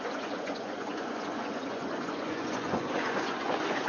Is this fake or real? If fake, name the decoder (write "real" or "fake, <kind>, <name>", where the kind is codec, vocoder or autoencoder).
fake, vocoder, Vocos